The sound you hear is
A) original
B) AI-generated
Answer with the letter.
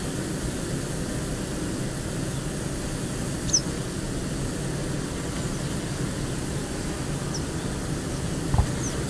A